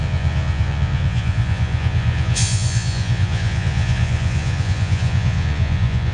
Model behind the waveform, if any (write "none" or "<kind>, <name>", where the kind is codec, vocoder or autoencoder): vocoder, Vocos